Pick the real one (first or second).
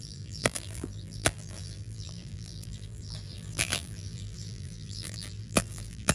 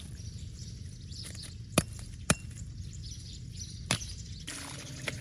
second